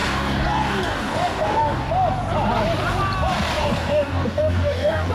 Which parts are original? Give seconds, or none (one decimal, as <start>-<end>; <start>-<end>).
1.9-3.6